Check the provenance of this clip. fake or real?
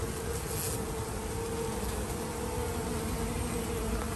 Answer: real